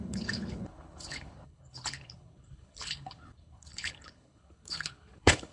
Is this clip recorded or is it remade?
remade